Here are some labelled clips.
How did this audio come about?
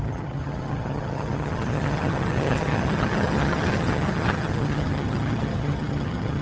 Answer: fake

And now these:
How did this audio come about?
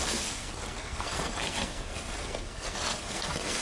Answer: fake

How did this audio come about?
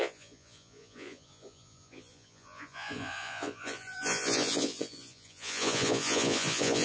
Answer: fake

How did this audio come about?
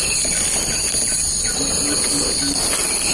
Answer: real